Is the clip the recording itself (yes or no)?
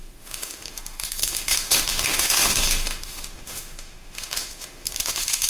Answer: no